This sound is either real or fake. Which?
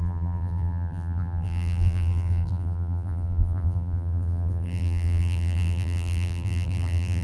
fake